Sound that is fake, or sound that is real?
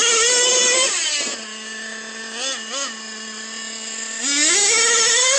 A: real